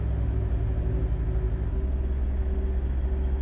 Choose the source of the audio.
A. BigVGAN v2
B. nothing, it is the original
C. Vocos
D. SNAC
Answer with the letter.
B